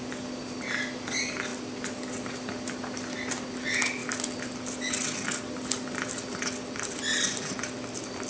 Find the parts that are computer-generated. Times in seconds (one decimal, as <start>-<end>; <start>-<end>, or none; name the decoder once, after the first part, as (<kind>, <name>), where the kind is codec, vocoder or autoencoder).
none